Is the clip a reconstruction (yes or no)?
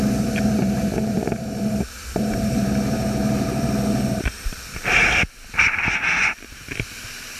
yes